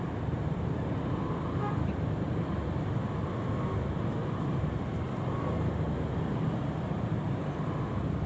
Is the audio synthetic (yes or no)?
no